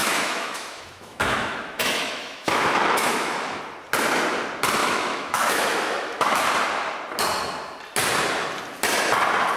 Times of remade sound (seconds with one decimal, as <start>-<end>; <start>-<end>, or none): 0.0-3.6; 4.8-6.4